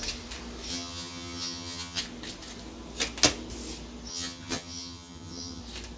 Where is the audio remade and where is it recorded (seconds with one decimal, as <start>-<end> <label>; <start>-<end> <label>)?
0.0-0.7 recorded; 0.7-2.0 remade; 2.0-4.1 recorded; 4.1-5.6 remade; 5.6-6.0 recorded